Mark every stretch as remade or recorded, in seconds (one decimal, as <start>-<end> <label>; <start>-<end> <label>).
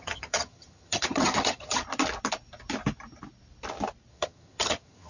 0.0-1.8 remade; 1.8-4.1 recorded; 4.1-5.1 remade